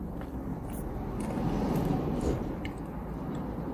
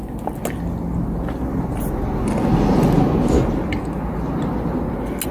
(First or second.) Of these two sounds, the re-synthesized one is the first